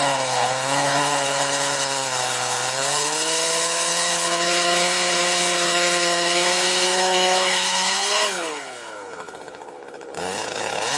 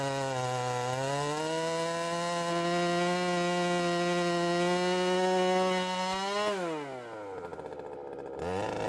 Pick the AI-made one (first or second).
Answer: first